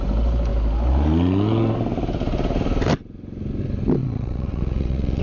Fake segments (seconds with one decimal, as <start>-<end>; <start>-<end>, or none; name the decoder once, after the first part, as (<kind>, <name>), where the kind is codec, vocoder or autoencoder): 4.0-5.2 (vocoder, WaveNeXt)